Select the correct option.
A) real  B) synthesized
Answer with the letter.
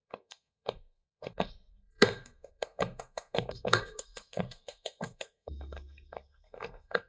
B